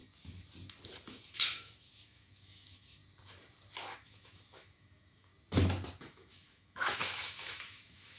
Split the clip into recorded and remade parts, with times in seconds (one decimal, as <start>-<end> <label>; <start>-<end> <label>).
0.0-1.1 recorded; 1.1-3.0 remade; 3.0-3.8 recorded; 3.8-5.3 remade; 5.3-6.0 recorded; 6.0-8.2 remade